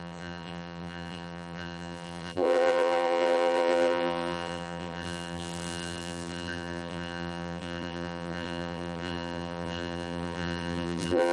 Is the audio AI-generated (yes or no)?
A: yes